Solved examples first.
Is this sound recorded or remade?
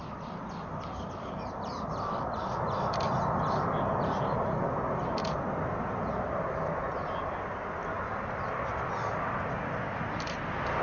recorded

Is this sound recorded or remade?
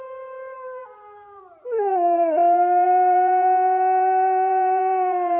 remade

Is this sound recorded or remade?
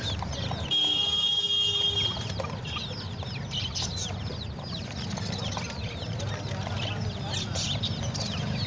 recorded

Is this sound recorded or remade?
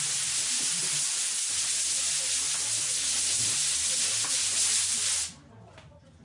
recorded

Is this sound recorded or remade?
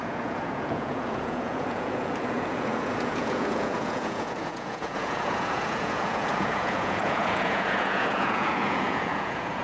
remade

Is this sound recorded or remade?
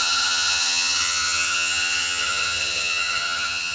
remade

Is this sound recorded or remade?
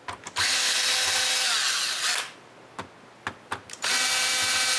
recorded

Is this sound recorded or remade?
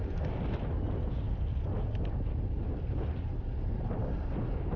recorded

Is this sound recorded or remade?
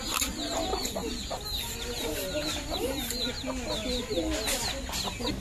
recorded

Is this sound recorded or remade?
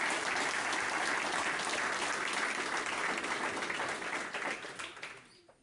recorded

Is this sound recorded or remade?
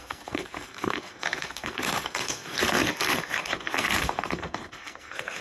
remade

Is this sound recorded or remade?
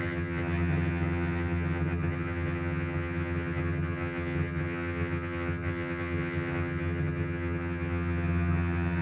remade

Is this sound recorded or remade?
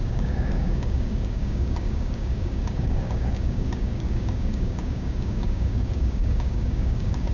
remade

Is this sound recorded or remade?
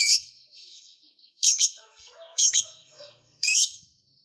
remade